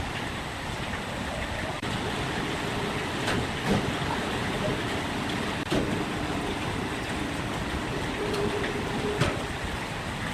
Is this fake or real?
real